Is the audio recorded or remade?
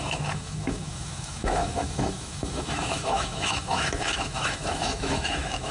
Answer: remade